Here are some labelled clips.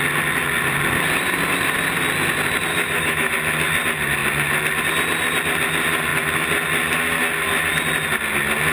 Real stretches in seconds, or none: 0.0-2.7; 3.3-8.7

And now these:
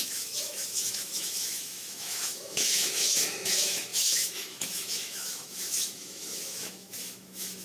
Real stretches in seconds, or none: none

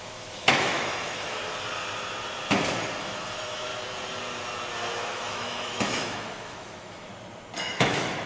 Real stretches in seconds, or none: 1.4-3.0; 3.7-5.0; 7.1-7.6

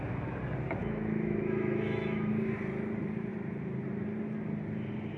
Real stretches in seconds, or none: 0.0-0.8; 2.3-5.2

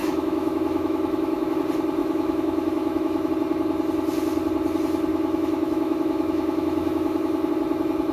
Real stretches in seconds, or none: 1.6-2.0; 3.3-5.1; 7.5-8.1

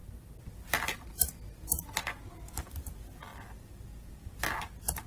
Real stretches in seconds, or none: 0.0-5.1

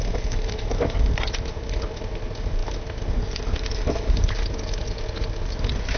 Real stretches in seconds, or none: 0.0-6.0

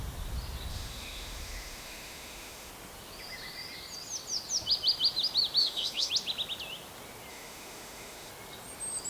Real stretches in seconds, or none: 0.0-0.7; 2.7-5.6; 6.1-7.3; 8.3-9.1